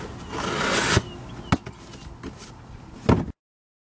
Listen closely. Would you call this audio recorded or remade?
recorded